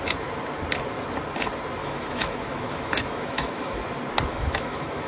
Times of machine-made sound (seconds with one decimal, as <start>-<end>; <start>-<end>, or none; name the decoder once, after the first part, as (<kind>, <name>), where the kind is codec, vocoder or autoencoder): 1.8-3.8 (autoencoder, DAC-VAE); 4.3-5.1